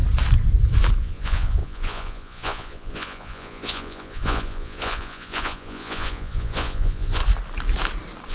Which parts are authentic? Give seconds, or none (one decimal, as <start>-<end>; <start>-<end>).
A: 0.0-1.0; 7.2-8.3